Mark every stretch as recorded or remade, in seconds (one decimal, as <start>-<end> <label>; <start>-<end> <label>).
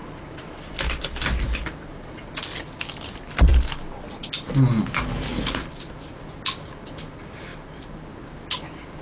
0.0-0.7 remade; 0.7-9.0 recorded